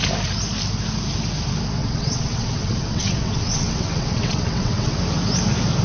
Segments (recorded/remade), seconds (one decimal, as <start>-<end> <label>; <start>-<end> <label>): 0.0-1.8 recorded; 1.8-5.0 remade; 5.0-5.8 recorded